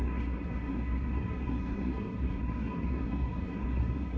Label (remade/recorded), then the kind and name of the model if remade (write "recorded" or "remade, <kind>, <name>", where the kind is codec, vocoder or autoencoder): remade, codec, SNAC